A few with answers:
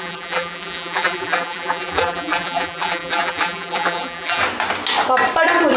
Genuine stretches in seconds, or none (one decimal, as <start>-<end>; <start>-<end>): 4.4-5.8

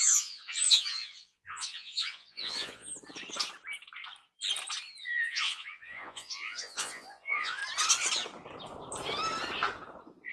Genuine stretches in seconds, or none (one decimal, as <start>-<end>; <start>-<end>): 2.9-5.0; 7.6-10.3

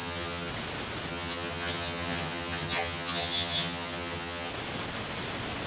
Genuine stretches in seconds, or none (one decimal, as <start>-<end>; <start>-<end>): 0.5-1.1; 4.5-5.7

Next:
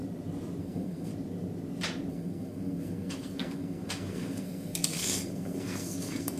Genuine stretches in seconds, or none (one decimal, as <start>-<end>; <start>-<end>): 0.0-0.6; 1.1-2.1

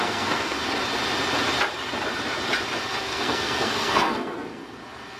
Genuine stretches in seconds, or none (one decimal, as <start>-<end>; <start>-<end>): 0.6-3.0; 4.6-5.2

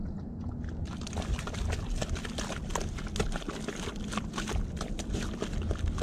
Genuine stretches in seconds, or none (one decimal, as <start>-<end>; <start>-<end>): 0.5-6.0

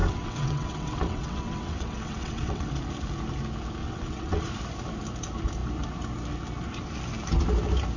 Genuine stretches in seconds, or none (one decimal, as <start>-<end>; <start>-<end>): 2.7-3.8; 4.4-8.0